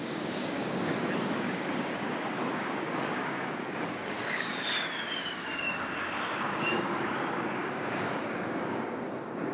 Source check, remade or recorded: remade